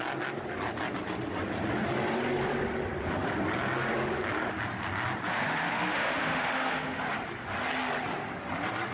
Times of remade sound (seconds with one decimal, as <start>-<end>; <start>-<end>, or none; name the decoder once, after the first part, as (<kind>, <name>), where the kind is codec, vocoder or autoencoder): 5.3-7.0 (autoencoder, DAC-VAE)